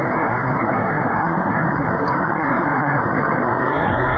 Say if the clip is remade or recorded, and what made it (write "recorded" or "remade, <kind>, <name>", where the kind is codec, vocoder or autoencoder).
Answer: remade, codec, SNAC